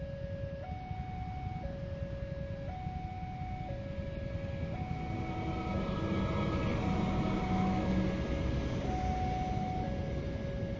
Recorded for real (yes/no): yes